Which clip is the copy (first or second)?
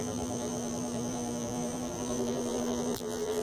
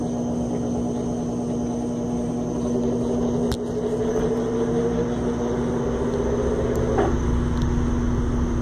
first